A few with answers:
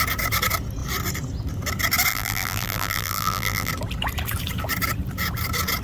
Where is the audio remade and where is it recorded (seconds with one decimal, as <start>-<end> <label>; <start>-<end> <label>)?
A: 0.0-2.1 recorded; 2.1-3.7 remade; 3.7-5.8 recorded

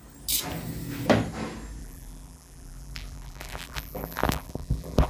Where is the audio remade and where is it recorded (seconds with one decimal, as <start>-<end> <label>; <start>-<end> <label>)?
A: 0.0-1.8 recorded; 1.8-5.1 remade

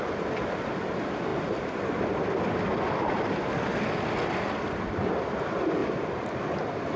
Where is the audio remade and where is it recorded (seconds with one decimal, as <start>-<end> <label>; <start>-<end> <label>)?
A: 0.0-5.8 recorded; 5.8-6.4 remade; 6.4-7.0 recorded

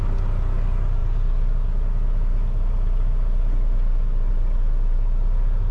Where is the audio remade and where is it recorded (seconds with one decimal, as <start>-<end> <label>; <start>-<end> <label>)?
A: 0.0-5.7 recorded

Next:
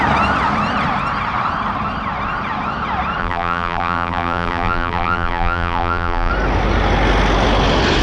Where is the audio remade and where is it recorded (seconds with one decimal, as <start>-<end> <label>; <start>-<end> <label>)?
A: 0.0-3.2 recorded; 3.2-6.3 remade; 6.3-8.0 recorded

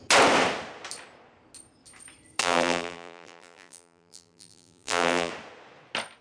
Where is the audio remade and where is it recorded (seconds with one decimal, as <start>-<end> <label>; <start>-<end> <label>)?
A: 0.0-2.4 recorded; 2.4-5.3 remade; 5.3-6.2 recorded